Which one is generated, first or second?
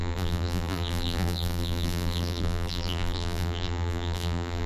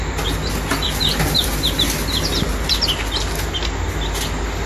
first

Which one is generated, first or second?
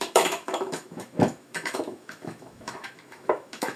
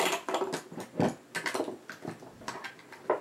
first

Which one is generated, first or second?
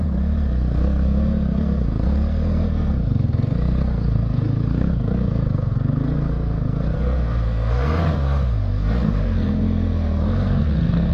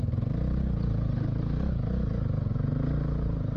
first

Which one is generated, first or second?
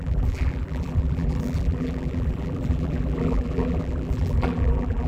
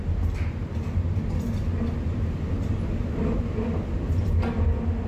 first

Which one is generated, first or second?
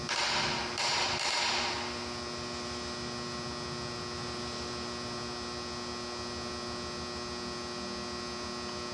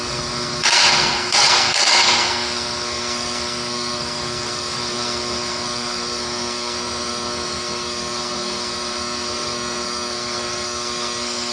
second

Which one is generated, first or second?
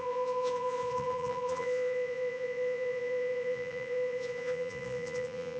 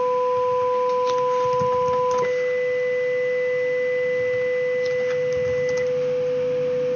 first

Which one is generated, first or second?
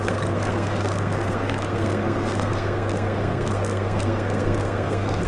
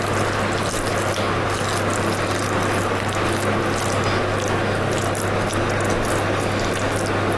first